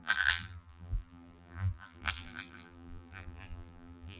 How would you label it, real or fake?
fake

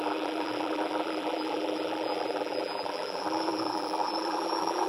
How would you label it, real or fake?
fake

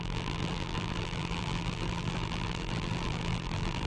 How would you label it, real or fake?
fake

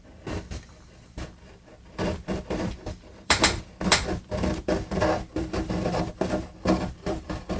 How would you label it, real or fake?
fake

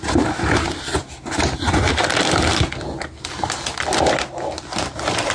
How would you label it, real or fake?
real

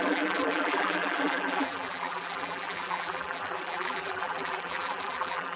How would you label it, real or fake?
fake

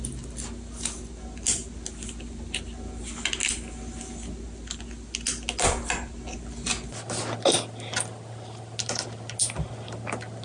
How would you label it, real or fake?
real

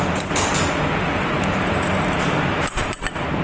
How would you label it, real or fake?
fake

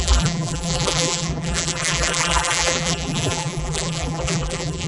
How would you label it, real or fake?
fake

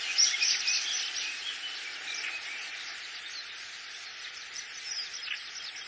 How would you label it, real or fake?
real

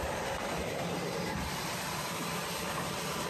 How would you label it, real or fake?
fake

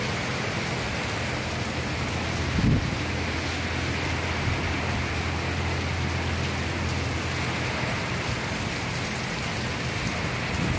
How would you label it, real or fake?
real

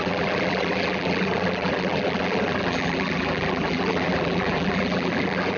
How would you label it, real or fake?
fake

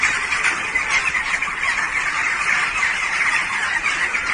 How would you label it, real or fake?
fake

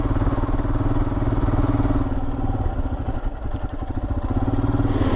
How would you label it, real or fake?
real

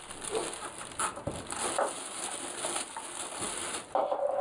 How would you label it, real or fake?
real